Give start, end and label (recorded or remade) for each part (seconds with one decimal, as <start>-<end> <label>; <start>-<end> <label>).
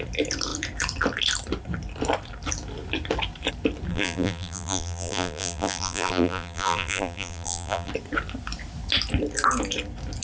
0.0-3.9 recorded; 3.9-7.9 remade; 7.9-10.2 recorded